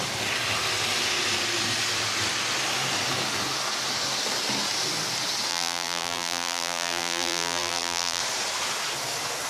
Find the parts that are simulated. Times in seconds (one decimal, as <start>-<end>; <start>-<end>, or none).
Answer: 5.5-8.2